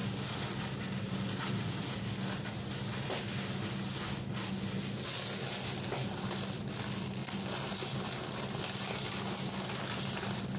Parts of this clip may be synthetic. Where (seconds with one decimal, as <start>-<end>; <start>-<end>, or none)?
none